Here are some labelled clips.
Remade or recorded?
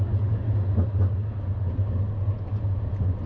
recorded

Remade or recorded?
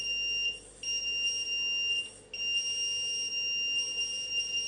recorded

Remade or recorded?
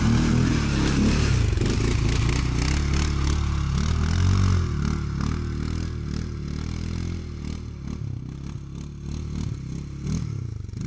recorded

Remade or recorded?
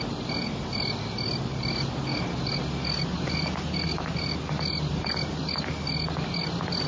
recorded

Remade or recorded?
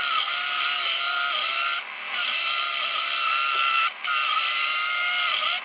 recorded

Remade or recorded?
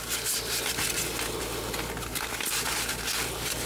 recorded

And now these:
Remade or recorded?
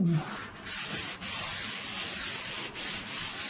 recorded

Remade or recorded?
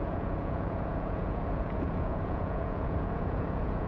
remade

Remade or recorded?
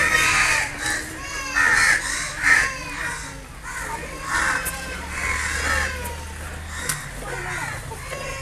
recorded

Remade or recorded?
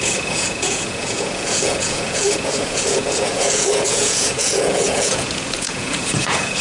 remade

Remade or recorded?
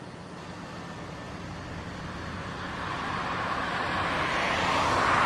recorded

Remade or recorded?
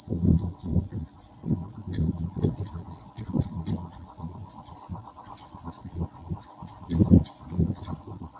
remade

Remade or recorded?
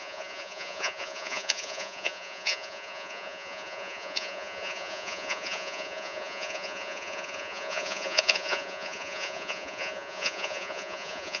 remade